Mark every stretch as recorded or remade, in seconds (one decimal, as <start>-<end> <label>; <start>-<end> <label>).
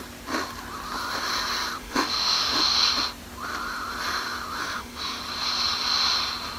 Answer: 0.0-1.8 recorded; 1.8-2.6 remade; 2.6-4.6 recorded; 4.6-5.2 remade; 5.2-6.6 recorded